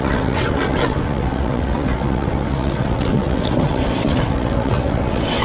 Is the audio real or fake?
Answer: fake